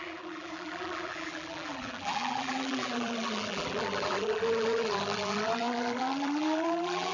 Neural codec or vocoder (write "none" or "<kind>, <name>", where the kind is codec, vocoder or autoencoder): vocoder, BigVGAN v2